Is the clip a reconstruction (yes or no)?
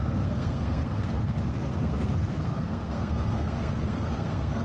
yes